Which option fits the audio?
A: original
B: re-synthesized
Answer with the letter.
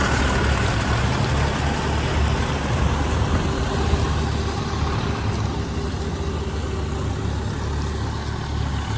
A